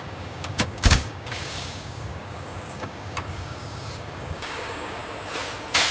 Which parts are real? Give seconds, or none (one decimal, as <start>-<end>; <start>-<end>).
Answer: 5.0-5.9